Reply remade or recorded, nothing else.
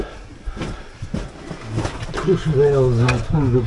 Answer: recorded